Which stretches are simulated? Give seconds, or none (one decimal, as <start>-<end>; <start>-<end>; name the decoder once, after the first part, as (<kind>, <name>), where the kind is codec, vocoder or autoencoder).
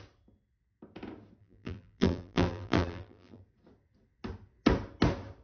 1.4-3.4 (vocoder, BigVGAN v2)